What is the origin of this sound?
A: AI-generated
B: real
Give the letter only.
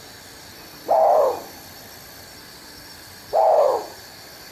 B